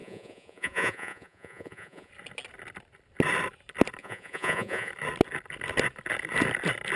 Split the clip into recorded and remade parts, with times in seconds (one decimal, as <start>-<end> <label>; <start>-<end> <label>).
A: 0.0-2.1 remade; 2.1-4.0 recorded; 4.0-4.9 remade; 4.9-7.0 recorded